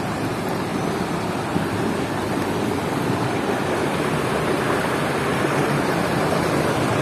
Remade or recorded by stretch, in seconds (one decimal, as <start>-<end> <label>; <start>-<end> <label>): 0.0-0.7 remade; 0.7-4.9 recorded; 4.9-7.0 remade